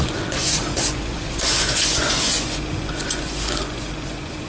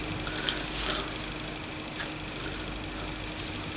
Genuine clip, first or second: second